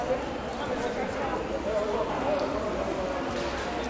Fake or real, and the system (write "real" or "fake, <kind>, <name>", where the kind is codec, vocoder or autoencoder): real